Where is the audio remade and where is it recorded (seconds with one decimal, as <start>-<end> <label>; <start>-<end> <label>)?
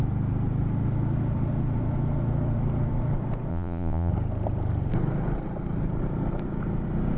0.0-3.5 recorded; 3.5-4.1 remade; 4.1-7.2 recorded